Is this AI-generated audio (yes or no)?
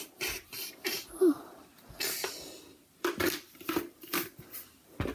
no